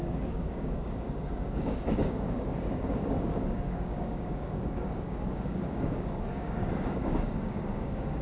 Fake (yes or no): yes